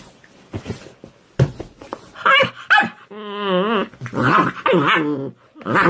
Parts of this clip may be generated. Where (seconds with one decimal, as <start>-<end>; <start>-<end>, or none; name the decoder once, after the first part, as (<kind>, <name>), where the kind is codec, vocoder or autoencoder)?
none